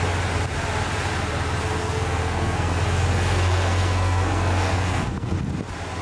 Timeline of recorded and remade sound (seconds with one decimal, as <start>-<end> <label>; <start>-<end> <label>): 0.0-1.8 recorded; 1.8-5.4 remade; 5.4-6.0 recorded